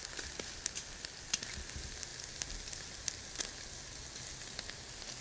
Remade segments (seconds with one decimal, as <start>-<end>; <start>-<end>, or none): none